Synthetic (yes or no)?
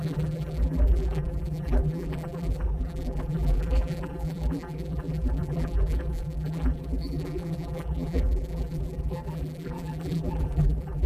yes